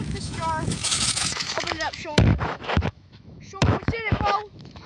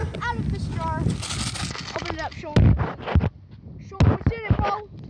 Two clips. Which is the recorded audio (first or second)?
second